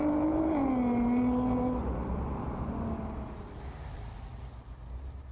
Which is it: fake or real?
real